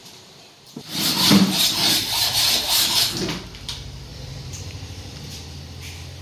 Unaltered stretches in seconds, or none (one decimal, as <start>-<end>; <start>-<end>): 3.0-4.1; 5.3-6.2

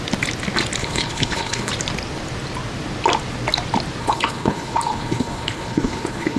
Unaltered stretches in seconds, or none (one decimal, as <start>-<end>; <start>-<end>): 0.0-0.8; 1.7-4.0

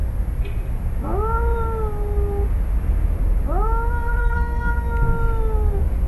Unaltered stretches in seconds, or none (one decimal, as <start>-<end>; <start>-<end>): 0.0-4.2; 4.7-6.1

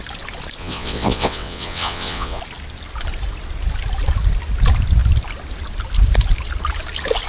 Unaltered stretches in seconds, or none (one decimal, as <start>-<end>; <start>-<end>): 0.0-0.6; 2.4-7.3

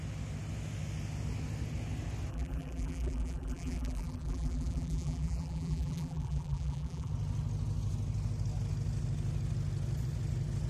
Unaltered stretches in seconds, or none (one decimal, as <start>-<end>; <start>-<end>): 0.0-2.3; 7.1-10.7

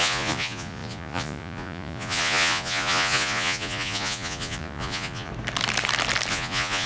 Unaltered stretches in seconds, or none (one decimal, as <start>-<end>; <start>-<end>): 5.3-6.3

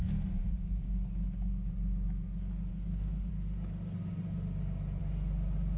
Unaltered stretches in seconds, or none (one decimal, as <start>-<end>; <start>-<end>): 0.0-2.7; 3.3-5.8

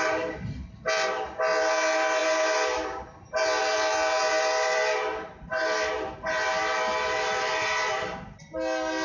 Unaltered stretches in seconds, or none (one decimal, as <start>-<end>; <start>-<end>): 0.0-9.0